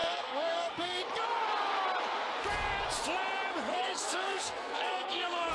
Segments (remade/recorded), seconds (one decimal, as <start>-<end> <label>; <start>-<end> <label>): 0.0-1.0 remade; 1.0-3.7 recorded; 3.7-5.5 remade